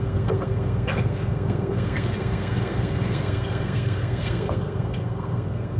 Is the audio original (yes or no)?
no